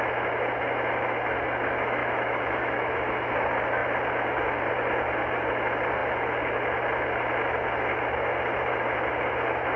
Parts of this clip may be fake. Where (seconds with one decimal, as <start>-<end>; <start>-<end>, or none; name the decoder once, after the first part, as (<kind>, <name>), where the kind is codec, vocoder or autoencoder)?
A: 2.0-3.3 (autoencoder, DAC-VAE)